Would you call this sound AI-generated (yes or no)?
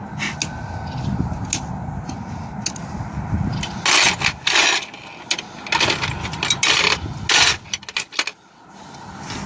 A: no